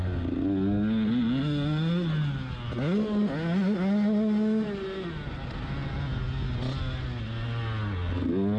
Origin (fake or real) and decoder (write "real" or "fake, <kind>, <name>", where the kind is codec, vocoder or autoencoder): real